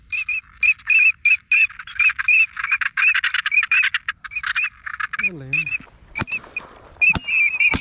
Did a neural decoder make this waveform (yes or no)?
no